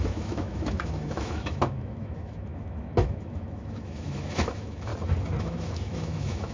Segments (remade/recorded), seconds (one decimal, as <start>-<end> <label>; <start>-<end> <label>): 0.0-4.9 remade; 4.9-5.4 recorded; 5.4-6.5 remade